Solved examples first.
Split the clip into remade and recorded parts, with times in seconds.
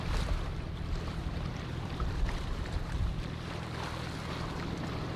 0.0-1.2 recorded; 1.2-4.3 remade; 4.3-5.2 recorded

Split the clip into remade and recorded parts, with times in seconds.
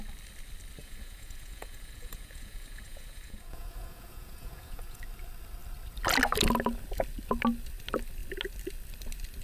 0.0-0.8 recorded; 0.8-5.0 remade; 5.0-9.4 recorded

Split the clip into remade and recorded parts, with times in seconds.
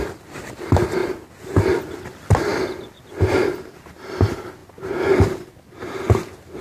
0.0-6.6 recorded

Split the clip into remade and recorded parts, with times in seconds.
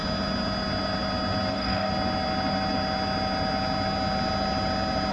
0.0-1.5 recorded; 1.5-1.9 remade; 1.9-5.1 recorded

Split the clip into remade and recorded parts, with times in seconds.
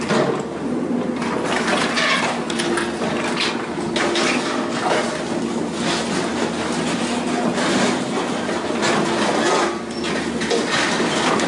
0.0-11.5 recorded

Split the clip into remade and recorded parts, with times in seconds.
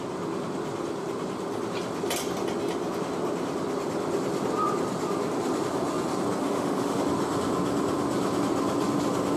0.0-6.4 recorded; 6.4-7.0 remade; 7.0-9.4 recorded